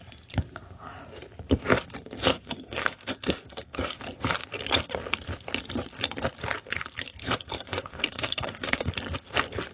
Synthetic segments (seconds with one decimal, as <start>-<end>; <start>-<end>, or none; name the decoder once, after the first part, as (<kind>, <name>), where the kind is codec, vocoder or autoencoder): 2.3-4.0 (codec, SNAC); 7.2-8.9